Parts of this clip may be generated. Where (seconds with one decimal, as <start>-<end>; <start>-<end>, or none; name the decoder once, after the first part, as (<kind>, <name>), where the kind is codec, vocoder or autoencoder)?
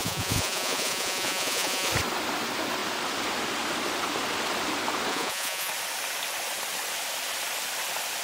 0.0-1.9 (vocoder, Vocos); 5.1-5.7